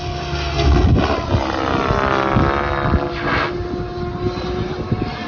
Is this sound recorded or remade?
recorded